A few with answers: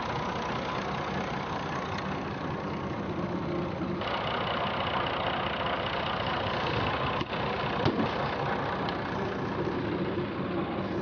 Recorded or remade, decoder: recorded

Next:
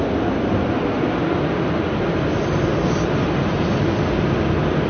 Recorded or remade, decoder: recorded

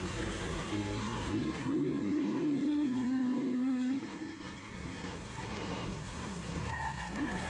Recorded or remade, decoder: remade, codec, SNAC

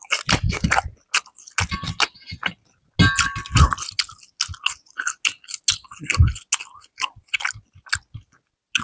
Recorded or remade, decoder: recorded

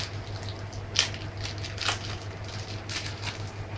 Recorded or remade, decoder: recorded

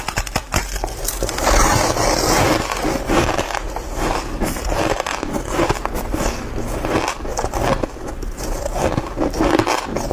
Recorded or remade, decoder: recorded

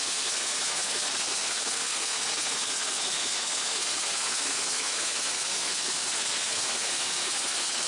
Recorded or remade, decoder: remade, codec, SNAC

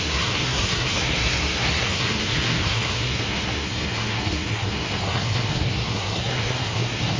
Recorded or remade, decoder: remade, codec, SNAC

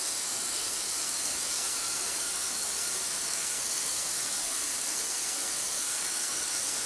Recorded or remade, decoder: remade, codec, SNAC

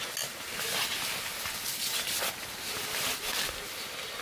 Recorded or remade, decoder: recorded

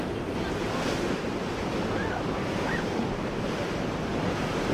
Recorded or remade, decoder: recorded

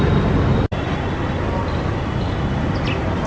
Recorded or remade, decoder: recorded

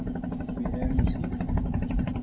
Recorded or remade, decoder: recorded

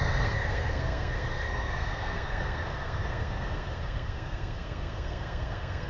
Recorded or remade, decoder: remade, codec, SNAC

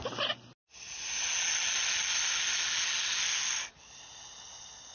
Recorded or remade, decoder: recorded